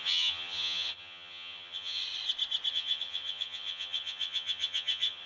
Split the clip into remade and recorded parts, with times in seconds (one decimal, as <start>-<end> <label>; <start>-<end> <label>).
0.0-2.0 remade; 2.0-2.7 recorded; 2.7-5.3 remade